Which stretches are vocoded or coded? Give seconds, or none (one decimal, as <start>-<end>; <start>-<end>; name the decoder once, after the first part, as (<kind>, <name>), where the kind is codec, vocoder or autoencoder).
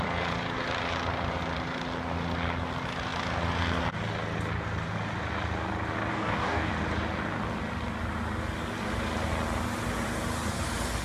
6.1-6.7 (codec, DAC)